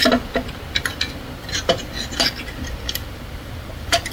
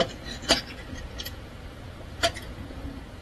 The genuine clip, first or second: first